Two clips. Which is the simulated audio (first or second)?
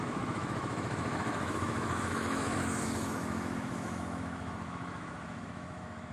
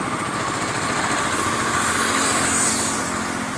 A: first